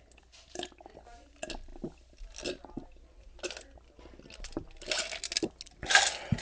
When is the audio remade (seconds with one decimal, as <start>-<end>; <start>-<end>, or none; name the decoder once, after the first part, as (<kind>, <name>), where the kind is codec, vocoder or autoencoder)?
none